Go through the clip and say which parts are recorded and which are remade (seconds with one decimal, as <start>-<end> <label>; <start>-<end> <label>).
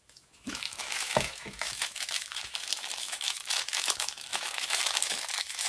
0.0-5.7 remade